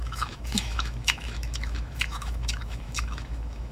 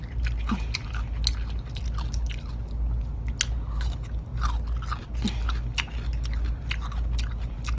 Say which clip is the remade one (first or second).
first